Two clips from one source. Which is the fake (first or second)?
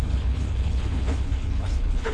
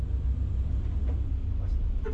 first